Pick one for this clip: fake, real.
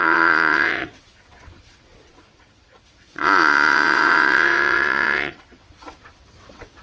fake